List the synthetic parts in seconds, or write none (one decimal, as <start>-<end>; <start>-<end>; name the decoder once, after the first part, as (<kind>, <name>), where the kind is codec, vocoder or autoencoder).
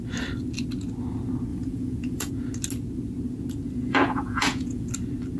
1.5-2.3 (vocoder, Vocos); 3.9-4.9